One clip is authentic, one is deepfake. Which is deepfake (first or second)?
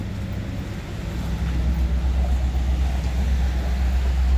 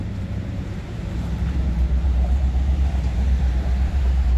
second